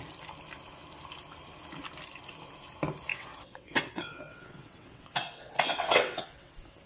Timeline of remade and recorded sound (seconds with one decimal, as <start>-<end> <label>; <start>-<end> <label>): 0.0-3.1 recorded; 3.1-6.5 remade; 6.5-6.9 recorded